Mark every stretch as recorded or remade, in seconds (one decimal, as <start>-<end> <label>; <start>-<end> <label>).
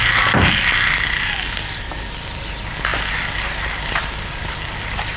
0.0-5.2 recorded